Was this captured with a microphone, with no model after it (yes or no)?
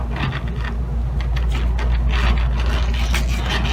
yes